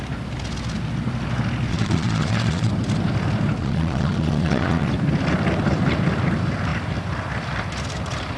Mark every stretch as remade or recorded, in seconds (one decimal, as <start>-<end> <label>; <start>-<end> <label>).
0.0-1.7 recorded; 1.7-2.7 remade; 2.7-3.6 recorded; 3.6-4.9 remade; 4.9-8.4 recorded